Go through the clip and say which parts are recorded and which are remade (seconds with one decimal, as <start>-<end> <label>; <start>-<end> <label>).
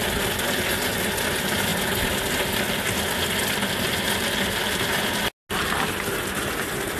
0.0-7.0 recorded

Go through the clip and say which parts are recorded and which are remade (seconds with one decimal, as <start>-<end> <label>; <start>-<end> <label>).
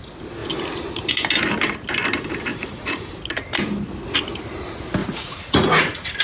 0.0-2.5 recorded; 2.5-3.1 remade; 3.1-5.0 recorded; 5.0-6.2 remade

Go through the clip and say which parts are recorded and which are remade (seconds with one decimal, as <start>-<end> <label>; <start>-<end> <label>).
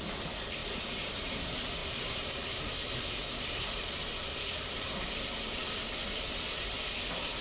0.0-0.6 recorded; 0.6-1.4 remade; 1.4-1.8 recorded; 1.8-5.8 remade; 5.8-7.4 recorded